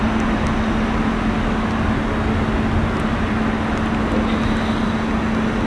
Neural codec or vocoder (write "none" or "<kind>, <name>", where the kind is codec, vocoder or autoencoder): none